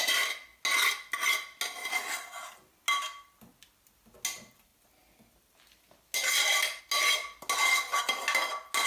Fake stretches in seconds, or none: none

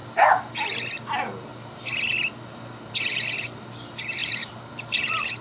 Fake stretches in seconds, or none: 0.0-0.5 (vocoder, BigVGAN v2); 4.2-5.4